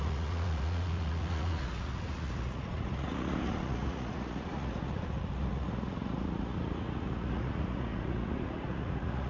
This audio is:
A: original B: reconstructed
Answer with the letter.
B